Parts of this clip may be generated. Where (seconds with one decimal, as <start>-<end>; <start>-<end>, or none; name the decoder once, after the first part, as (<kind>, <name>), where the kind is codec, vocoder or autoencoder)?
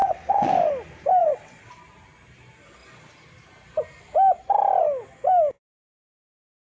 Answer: 0.0-0.5 (vocoder, WaveNeXt); 1.2-1.7